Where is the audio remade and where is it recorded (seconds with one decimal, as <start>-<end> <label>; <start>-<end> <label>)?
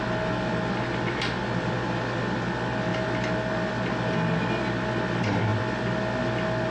0.0-6.7 recorded